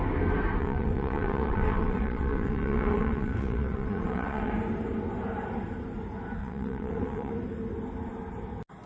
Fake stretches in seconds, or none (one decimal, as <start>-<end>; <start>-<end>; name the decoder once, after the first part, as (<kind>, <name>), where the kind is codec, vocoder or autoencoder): 0.6-4.5 (vocoder, WaveNeXt); 6.4-7.3